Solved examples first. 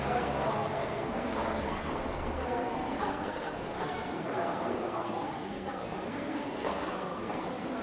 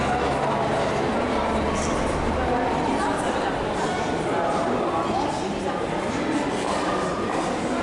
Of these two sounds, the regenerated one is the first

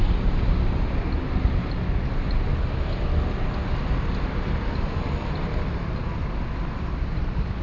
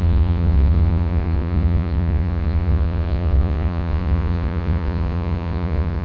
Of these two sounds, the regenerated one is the second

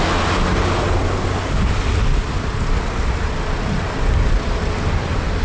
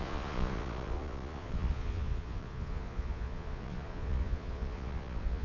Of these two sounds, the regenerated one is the second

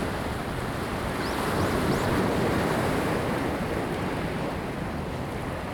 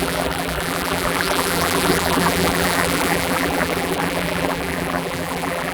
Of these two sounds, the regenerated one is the second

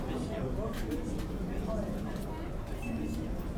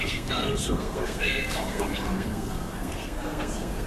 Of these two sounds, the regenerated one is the second